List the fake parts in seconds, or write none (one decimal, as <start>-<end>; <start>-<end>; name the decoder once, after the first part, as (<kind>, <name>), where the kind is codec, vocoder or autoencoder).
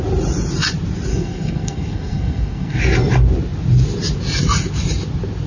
1.1-2.8 (codec, SNAC)